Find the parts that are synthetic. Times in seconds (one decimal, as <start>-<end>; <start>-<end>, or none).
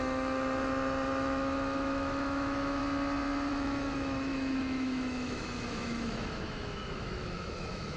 0.0-2.8; 3.5-8.0